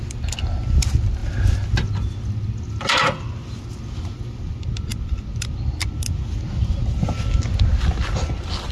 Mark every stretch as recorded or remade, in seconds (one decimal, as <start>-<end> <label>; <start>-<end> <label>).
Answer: 0.0-8.7 recorded